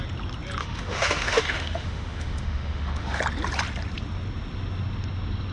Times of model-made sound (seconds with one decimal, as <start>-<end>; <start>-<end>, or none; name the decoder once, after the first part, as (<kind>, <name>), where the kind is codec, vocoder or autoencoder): 0.6-3.2 (autoencoder, DAC-VAE)